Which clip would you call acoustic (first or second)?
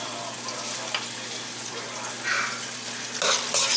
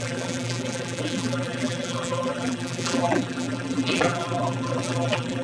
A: first